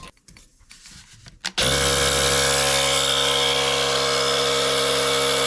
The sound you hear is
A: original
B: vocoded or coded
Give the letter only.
A